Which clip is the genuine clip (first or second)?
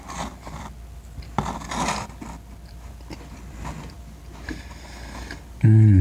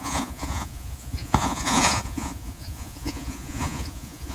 first